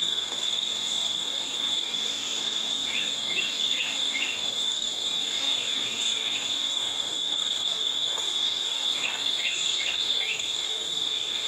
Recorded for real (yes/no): no